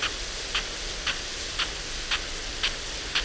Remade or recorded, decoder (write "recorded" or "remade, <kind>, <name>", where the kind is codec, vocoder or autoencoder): recorded